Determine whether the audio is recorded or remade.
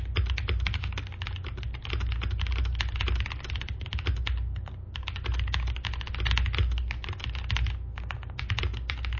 recorded